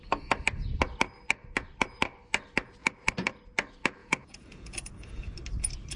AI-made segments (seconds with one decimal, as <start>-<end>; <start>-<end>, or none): 4.0-5.2